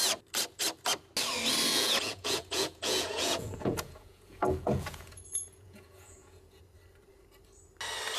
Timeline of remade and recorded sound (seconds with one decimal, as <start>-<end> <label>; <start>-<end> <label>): 0.0-1.7 recorded; 1.7-6.6 remade; 6.6-8.2 recorded